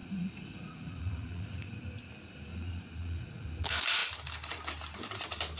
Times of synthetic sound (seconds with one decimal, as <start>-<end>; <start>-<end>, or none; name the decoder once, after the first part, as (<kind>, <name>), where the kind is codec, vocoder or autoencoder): 0.0-1.8 (vocoder, Vocos); 2.5-3.5